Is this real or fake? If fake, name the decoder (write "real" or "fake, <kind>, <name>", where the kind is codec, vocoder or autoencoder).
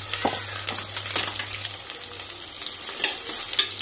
real